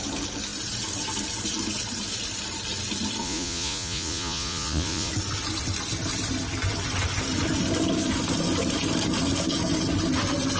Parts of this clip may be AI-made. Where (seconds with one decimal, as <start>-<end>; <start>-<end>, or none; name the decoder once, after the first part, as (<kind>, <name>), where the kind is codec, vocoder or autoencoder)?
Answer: 3.2-5.1 (vocoder, Vocos)